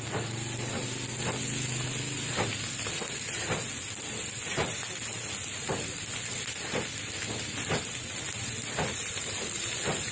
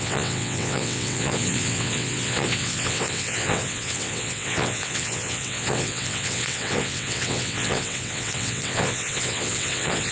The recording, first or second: first